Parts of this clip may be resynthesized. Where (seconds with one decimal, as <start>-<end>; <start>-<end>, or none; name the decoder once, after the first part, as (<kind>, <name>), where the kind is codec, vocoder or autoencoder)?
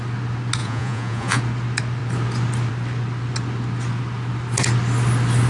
0.6-1.4 (vocoder, Vocos)